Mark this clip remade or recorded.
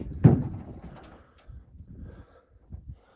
recorded